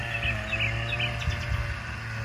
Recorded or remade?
recorded